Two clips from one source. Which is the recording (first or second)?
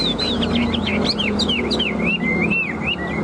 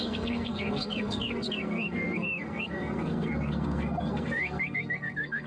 first